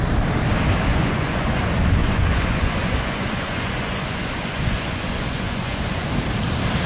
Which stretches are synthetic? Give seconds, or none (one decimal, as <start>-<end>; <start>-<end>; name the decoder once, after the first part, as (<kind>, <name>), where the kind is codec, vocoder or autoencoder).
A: 0.9-1.6 (vocoder, Vocos); 2.0-6.1